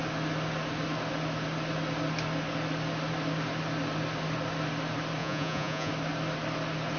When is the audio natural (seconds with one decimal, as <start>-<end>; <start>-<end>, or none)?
0.0-5.2; 5.9-7.0